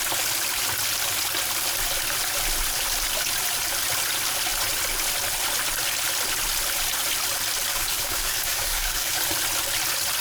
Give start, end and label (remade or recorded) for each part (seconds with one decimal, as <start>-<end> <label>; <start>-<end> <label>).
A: 0.0-7.7 recorded; 7.7-9.2 remade; 9.2-10.2 recorded